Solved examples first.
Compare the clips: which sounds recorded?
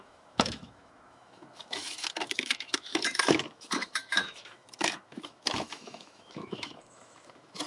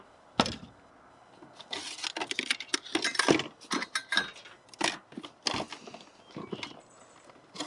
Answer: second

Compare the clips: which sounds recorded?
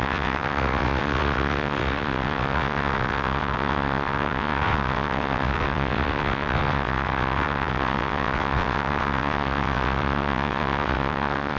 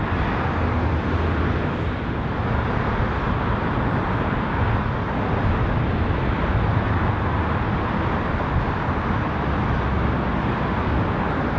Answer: second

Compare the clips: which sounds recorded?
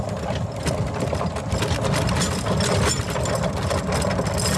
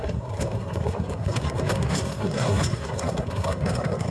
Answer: first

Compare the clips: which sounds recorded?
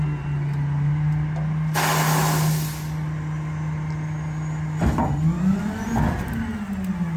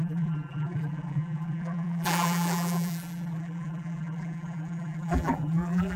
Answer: first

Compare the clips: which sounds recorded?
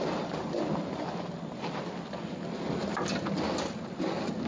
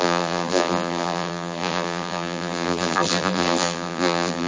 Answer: first